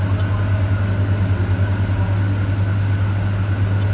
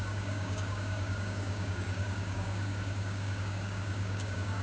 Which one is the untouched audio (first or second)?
first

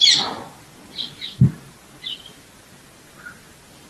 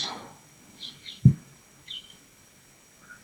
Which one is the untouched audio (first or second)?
first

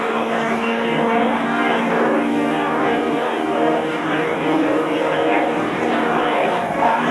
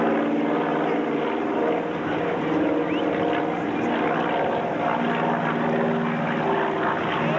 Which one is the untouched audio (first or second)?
second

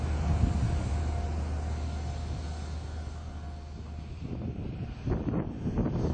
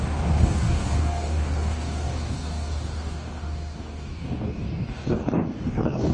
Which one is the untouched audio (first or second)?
first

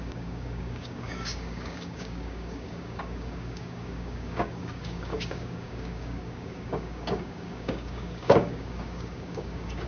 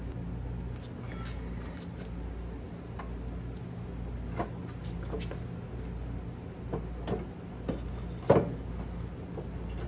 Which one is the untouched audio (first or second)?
second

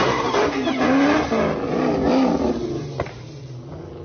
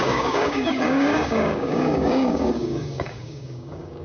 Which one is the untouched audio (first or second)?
first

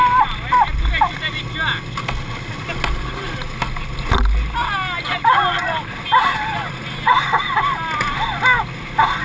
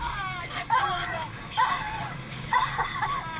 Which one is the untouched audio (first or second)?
first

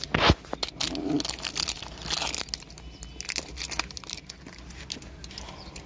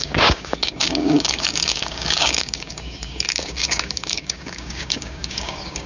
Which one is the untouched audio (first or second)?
first